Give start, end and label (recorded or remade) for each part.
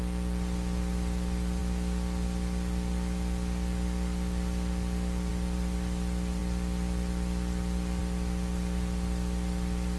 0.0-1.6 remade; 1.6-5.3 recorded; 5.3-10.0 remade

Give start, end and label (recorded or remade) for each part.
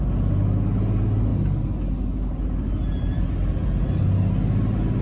0.0-5.0 recorded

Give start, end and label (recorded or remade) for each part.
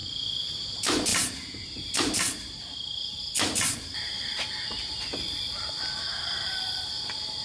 0.0-0.5 recorded; 0.5-7.4 remade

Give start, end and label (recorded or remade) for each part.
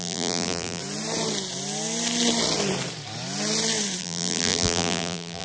0.0-0.8 remade; 0.8-4.0 recorded; 4.0-5.4 remade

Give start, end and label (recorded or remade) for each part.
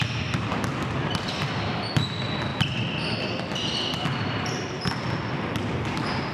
0.0-6.3 recorded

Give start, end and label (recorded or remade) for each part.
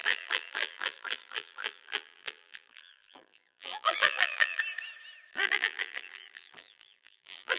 0.0-4.6 remade; 4.6-5.3 recorded; 5.3-7.6 remade